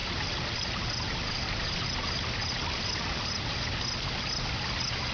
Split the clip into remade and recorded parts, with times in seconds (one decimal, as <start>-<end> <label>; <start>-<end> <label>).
0.0-5.1 recorded